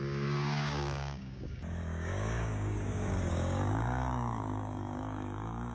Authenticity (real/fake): fake